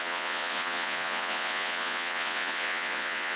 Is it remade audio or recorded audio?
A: remade